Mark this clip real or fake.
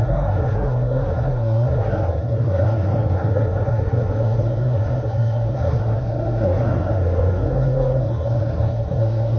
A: fake